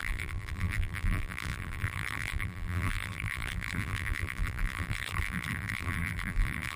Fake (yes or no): yes